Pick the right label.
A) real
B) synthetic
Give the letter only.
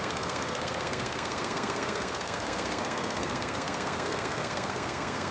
B